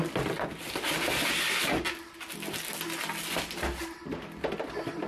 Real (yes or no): yes